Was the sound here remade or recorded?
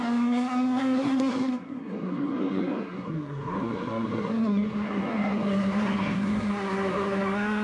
remade